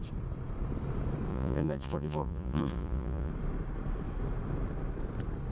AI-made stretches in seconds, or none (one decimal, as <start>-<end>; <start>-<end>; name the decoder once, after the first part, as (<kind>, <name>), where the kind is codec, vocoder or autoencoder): 1.3-3.3 (vocoder, Vocos)